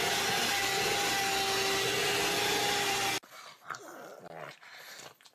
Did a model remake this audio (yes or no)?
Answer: no